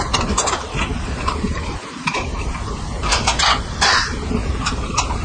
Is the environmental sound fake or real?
fake